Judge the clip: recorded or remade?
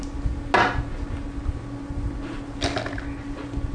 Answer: recorded